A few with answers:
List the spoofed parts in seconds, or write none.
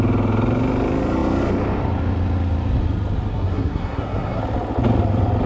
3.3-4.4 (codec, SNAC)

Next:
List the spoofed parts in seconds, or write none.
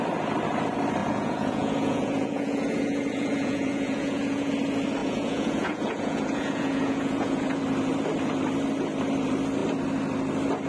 1.0-4.5 (vocoder, Vocos); 5.0-7.6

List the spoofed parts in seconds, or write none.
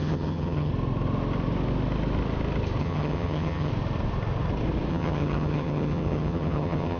0.0-0.7 (vocoder, HiFi-GAN); 2.8-3.7; 4.9-7.0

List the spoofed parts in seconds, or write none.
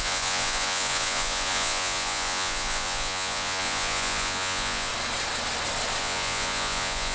0.0-4.9 (vocoder, Vocos); 6.0-7.1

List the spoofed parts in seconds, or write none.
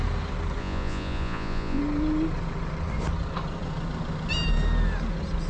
0.6-1.8 (vocoder, Vocos)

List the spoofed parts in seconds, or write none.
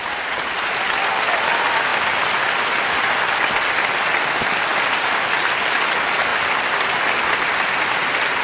1.9-3.1 (vocoder, BigVGAN v2); 4.7-5.4; 6.3-7.2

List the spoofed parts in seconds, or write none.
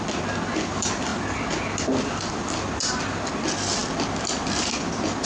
none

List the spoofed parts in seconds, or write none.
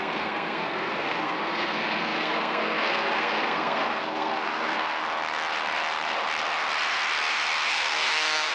0.0-5.0 (codec, SNAC); 7.7-8.5